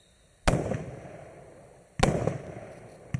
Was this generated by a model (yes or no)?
no